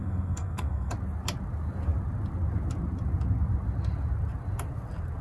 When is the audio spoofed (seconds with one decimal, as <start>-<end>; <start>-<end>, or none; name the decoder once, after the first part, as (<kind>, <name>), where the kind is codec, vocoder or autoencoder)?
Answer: 0.0-0.9 (codec, SNAC)